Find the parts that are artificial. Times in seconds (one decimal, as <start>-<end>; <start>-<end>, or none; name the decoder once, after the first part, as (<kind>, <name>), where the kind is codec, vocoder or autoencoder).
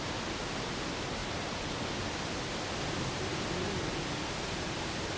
none